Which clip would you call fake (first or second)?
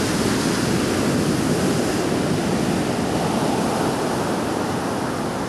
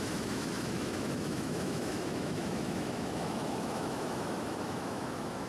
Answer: second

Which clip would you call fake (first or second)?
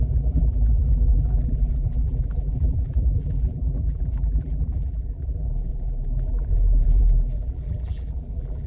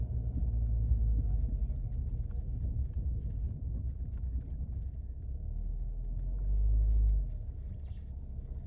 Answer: first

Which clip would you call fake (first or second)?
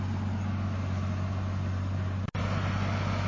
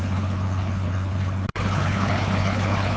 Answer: second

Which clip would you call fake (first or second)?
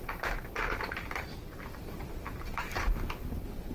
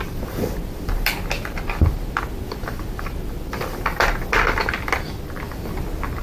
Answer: first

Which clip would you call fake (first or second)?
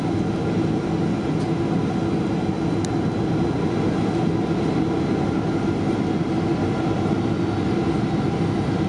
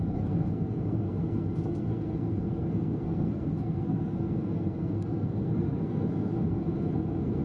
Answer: second